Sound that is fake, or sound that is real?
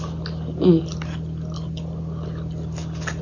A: real